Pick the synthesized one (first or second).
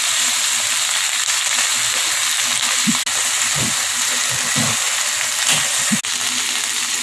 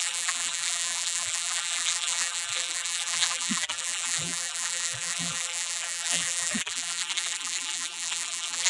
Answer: second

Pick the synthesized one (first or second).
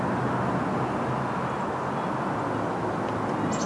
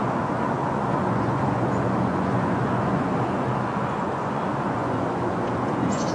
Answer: second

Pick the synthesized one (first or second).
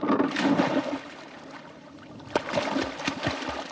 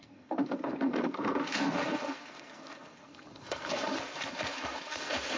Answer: second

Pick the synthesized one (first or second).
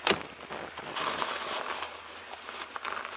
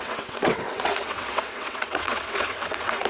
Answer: second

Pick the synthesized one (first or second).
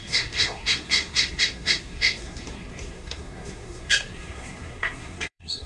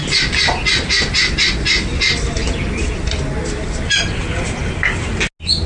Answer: first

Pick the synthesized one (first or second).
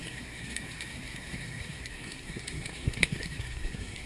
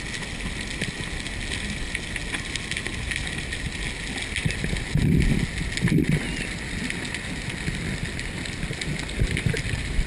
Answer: first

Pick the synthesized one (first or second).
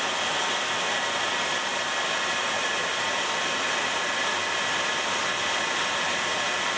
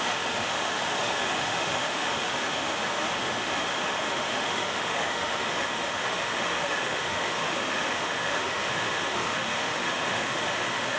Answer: second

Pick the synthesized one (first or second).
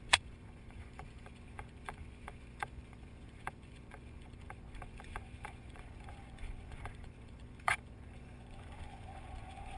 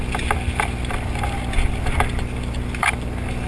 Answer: first